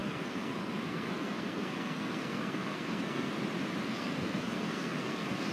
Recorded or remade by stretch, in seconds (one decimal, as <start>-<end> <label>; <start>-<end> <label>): 0.0-3.3 remade; 3.3-3.8 recorded; 3.8-5.5 remade